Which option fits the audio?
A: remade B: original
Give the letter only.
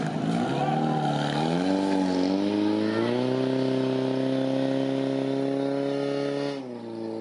B